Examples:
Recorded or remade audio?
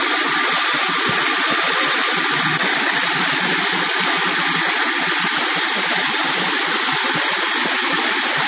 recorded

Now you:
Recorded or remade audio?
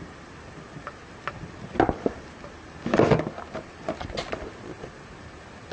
recorded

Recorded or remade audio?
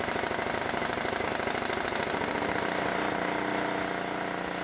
recorded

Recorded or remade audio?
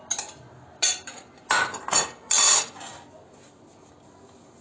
recorded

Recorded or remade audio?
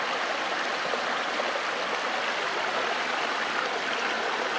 recorded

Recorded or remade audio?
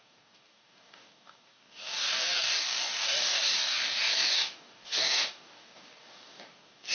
remade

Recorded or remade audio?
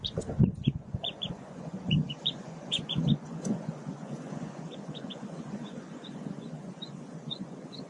remade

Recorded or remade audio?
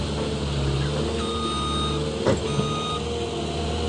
recorded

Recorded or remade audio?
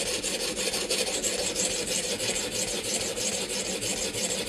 recorded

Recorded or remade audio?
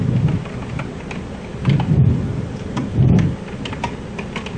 remade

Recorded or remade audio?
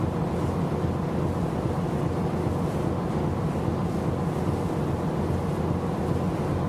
recorded